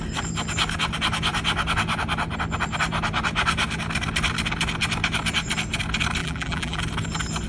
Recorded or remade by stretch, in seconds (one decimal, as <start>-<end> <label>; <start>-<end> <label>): 0.0-6.2 recorded; 6.2-6.8 remade; 6.8-7.5 recorded